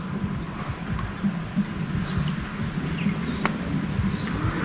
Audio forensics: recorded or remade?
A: recorded